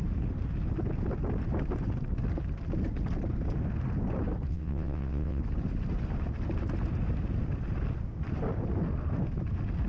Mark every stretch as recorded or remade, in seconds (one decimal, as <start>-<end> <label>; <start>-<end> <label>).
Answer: 0.0-4.5 recorded; 4.5-5.4 remade; 5.4-9.9 recorded